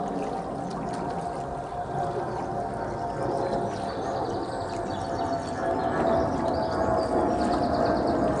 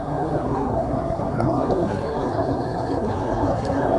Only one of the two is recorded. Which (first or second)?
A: first